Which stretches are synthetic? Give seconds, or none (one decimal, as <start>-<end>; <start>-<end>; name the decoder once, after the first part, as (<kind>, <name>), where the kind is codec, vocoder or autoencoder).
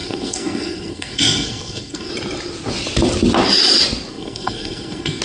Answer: 0.0-2.1 (codec, SNAC); 4.1-5.2